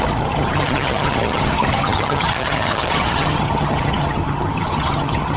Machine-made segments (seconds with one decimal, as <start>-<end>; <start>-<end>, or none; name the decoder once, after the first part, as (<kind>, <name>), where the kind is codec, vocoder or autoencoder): 0.0-5.4 (vocoder, HiFi-GAN)

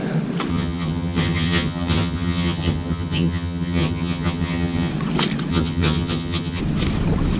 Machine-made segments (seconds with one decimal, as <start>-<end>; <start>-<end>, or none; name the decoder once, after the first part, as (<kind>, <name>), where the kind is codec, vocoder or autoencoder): 0.5-4.9 (vocoder, HiFi-GAN); 5.5-6.6

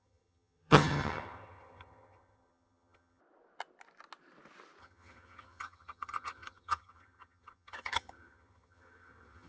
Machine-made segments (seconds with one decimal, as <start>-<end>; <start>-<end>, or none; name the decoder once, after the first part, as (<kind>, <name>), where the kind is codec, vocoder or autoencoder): 0.0-3.2 (vocoder, HiFi-GAN); 4.8-9.5

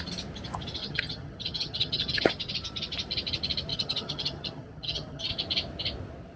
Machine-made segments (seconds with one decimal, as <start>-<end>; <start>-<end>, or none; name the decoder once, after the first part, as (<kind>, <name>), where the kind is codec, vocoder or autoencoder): 0.8-2.2 (vocoder, HiFi-GAN); 3.7-5.3

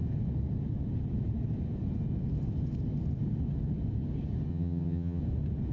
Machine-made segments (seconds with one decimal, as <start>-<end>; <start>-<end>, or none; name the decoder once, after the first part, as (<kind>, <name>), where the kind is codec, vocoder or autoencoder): 4.5-5.2 (vocoder, HiFi-GAN)